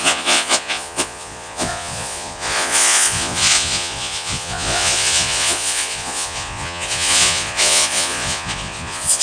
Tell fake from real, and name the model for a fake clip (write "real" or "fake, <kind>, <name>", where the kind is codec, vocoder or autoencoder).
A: fake, vocoder, Vocos